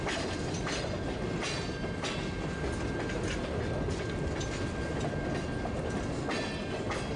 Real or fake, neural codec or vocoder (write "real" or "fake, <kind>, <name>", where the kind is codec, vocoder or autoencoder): real